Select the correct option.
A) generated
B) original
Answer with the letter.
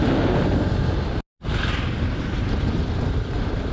B